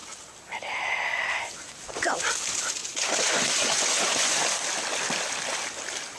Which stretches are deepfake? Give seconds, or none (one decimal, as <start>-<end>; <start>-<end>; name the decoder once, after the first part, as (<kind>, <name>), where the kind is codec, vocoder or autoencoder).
2.8-4.4 (vocoder, Vocos)